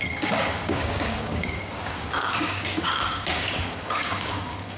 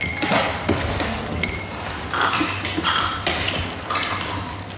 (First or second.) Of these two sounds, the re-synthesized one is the first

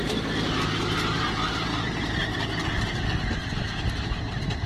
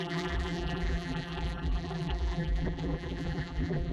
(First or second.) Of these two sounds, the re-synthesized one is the second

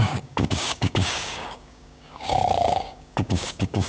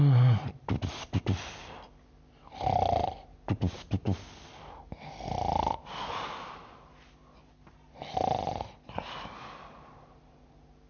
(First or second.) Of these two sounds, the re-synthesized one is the first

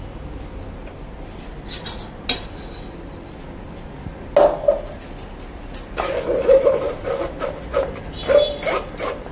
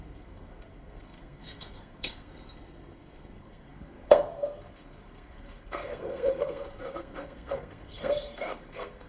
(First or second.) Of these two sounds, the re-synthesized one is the second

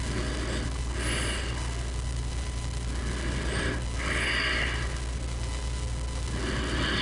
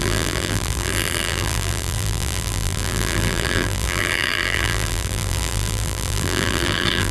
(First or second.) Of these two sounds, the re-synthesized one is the second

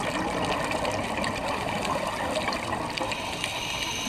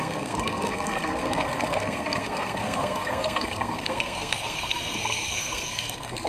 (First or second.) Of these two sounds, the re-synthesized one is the second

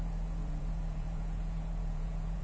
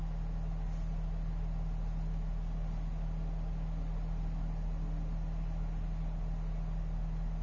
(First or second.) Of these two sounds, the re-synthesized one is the first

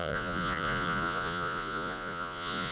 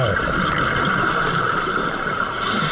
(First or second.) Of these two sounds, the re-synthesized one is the first